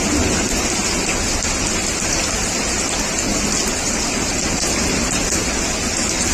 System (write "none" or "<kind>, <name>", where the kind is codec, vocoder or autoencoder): none